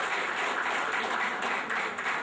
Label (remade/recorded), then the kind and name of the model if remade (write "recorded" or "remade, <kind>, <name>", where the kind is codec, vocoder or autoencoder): recorded